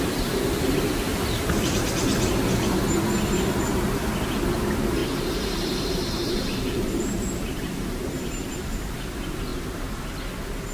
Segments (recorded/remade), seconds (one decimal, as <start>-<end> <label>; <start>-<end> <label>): 0.0-1.1 recorded; 1.1-1.8 remade; 1.8-5.0 recorded; 5.0-8.9 remade; 8.9-9.5 recorded; 9.5-10.2 remade; 10.2-10.7 recorded